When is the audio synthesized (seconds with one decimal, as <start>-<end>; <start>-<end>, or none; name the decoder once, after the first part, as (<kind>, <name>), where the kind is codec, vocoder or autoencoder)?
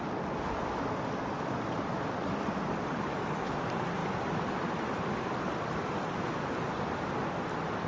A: 3.1-3.6 (autoencoder, DAC-VAE)